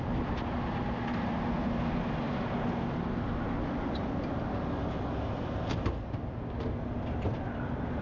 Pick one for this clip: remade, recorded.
recorded